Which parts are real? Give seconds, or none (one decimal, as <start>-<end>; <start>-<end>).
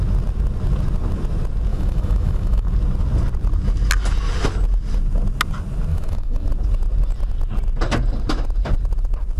0.0-1.7; 2.7-5.9; 6.5-9.4